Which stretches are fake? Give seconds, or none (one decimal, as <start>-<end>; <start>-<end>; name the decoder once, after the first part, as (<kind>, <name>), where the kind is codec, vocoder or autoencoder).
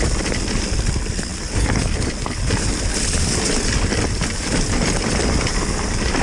none